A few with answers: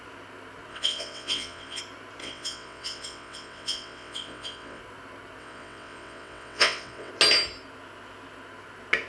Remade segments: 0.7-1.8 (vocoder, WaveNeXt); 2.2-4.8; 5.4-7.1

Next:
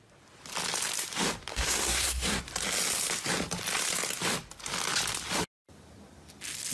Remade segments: 1.5-2.4 (codec, SNAC)

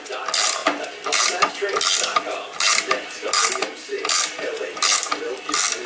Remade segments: 2.1-5.9 (vocoder, BigVGAN v2)

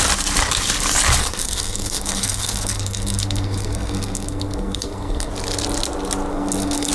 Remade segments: 1.2-5.3 (codec, SNAC); 6.3-6.9

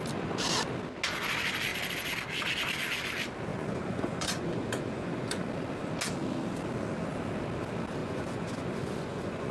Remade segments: 3.5-5.5 (vocoder, Vocos); 8.0-9.5

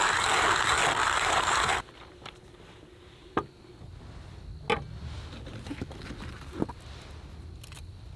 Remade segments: 1.0-1.9 (vocoder, BigVGAN v2); 3.2-3.7

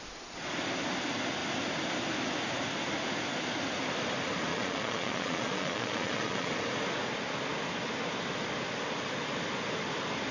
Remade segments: 4.5-6.5 (vocoder, Vocos)

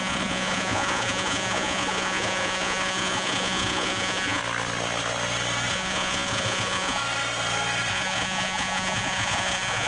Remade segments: 0.0-4.4 (vocoder, Vocos); 5.7-7.0; 7.9-9.9